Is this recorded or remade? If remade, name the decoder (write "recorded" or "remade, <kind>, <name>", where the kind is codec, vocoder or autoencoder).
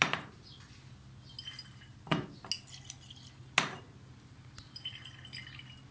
recorded